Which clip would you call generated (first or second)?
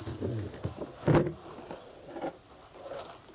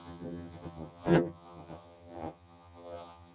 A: second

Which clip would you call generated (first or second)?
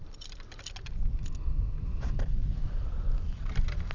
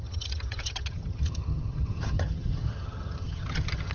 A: second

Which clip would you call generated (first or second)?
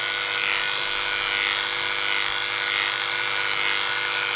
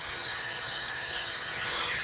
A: second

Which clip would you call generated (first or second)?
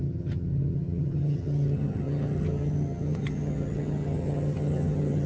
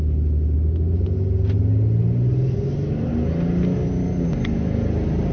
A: first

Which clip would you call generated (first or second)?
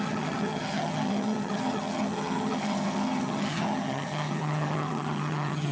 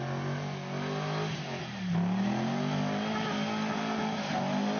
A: first